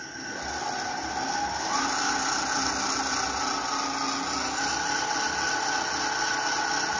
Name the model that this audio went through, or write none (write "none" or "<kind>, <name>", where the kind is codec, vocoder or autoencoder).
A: none